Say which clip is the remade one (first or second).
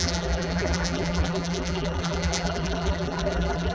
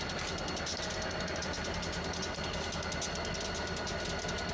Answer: first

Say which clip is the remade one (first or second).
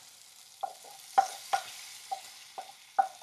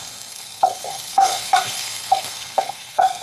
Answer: second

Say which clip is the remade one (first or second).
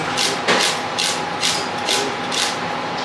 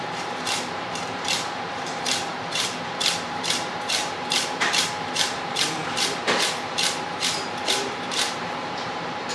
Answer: second